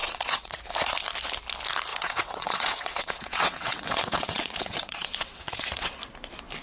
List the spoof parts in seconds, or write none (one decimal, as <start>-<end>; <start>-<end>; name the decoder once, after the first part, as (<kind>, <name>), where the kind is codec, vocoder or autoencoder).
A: 0.0-0.6 (vocoder, WaveNeXt); 1.9-5.9